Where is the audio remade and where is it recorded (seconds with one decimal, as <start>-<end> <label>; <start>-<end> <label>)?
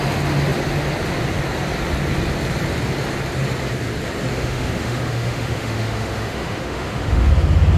0.0-4.3 recorded; 4.3-7.3 remade; 7.3-7.8 recorded